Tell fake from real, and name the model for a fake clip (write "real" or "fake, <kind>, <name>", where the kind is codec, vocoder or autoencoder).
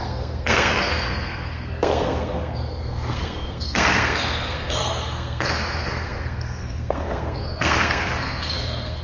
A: fake, codec, SNAC